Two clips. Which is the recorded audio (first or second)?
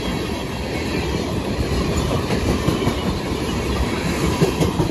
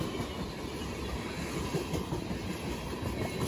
second